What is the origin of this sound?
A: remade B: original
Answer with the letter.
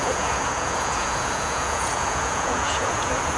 A